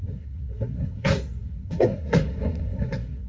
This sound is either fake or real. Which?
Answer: fake